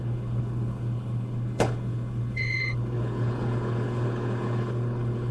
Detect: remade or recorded remade